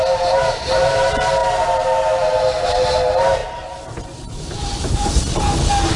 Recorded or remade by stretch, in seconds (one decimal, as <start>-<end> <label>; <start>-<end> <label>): 0.0-1.4 remade; 1.4-2.7 recorded; 2.7-3.4 remade; 3.4-4.4 recorded; 4.4-6.0 remade